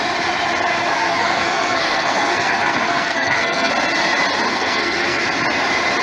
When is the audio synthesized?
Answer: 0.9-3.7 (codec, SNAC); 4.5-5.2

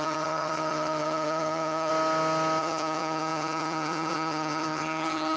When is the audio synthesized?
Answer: 0.0-1.9 (vocoder, HiFi-GAN); 2.6-5.4

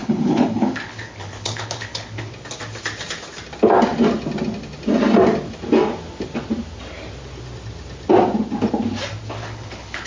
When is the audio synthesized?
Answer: 0.0-2.3 (codec, HILCodec); 9.4-10.1

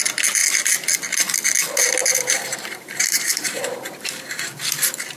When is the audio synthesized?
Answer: 2.1-4.6 (vocoder, BigVGAN v2)